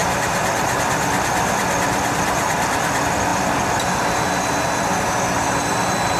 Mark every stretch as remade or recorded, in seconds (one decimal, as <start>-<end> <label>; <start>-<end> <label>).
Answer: 0.0-0.9 remade; 0.9-6.2 recorded